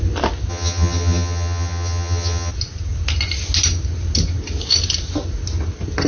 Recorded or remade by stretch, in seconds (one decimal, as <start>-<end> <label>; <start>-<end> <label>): 0.0-0.5 recorded; 0.5-2.5 remade; 2.5-6.1 recorded